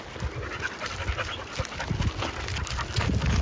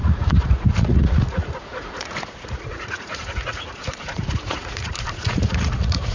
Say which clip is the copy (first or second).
second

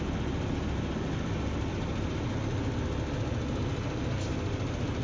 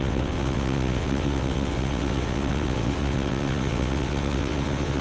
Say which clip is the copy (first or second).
second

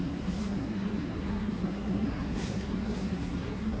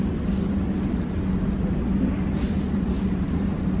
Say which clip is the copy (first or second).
first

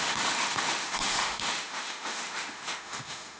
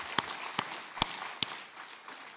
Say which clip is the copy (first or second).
first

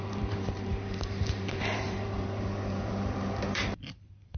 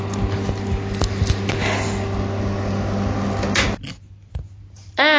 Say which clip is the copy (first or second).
first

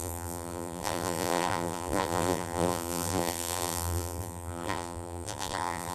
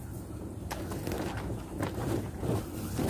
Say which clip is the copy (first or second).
first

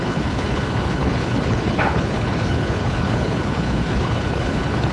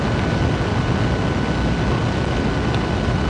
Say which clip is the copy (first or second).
first